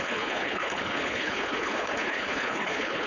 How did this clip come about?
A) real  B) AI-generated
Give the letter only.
B